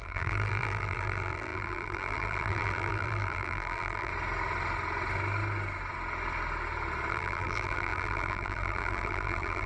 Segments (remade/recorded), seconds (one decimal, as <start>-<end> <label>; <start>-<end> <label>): 0.0-4.1 remade; 4.1-7.1 recorded; 7.1-9.7 remade